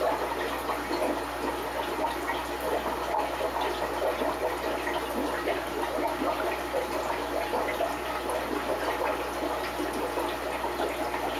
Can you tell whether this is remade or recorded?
recorded